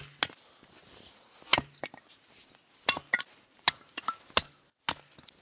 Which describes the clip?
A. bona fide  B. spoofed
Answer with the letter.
A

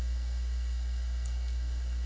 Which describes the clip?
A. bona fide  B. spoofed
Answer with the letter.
B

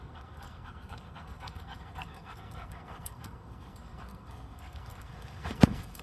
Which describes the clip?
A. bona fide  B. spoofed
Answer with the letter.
B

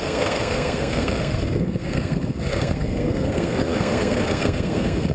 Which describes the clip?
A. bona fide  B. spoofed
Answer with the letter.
B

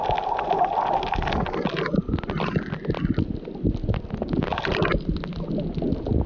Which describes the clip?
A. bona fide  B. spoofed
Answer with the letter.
A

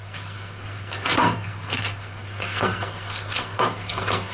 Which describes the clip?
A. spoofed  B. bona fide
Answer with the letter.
A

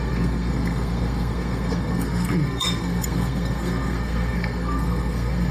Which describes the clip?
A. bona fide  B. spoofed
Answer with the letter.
B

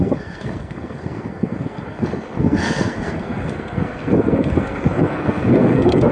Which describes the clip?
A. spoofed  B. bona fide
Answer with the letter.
A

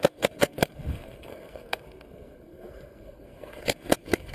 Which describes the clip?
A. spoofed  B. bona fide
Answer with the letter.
A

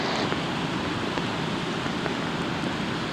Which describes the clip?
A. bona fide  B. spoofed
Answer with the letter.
A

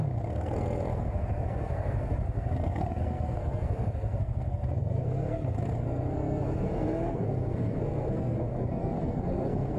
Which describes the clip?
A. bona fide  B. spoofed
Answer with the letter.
B